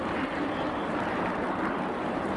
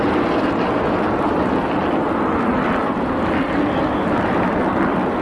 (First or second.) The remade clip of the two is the first